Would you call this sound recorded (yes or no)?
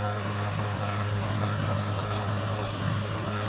no